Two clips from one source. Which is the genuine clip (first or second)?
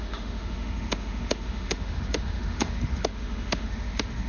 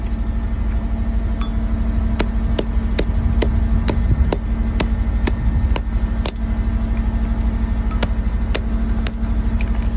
second